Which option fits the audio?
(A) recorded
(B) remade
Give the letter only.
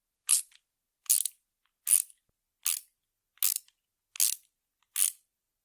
A